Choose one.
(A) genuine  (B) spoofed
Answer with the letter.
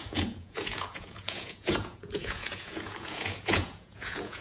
B